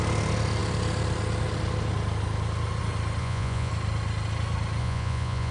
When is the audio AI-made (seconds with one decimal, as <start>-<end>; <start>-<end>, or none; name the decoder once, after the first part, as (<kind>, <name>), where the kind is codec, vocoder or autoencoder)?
3.2-3.7 (vocoder, Vocos); 4.8-5.5